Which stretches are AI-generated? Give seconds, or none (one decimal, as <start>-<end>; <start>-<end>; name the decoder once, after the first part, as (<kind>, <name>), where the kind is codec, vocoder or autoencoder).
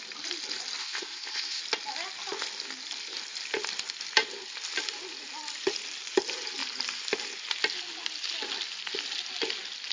0.8-1.6 (codec, ZipCodec)